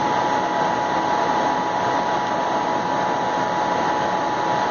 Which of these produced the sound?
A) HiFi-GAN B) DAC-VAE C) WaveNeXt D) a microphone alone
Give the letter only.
D